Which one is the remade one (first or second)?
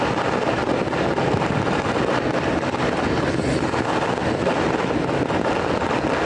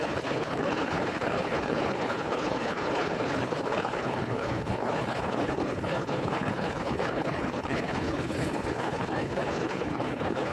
second